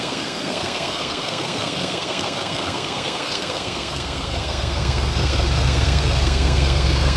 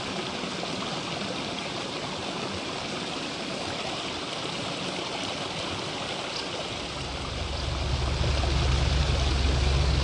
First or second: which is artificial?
first